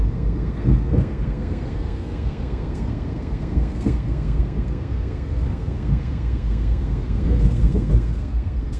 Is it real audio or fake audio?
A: fake